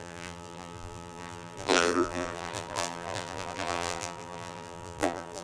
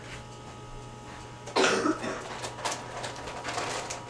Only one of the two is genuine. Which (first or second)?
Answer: second